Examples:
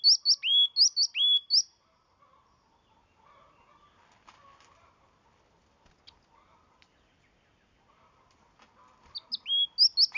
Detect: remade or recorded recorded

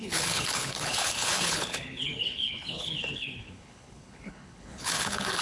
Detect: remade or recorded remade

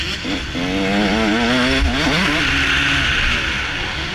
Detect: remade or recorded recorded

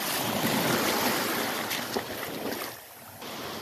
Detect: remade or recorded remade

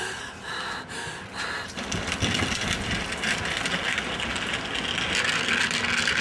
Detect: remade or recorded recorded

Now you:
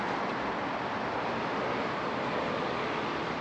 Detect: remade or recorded recorded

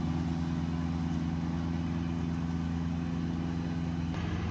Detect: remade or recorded recorded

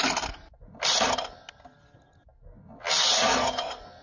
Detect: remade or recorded recorded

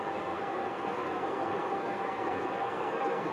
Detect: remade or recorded remade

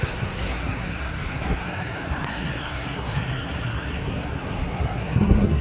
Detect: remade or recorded remade